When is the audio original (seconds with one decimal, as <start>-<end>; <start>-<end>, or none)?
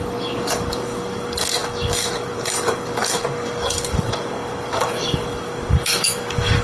none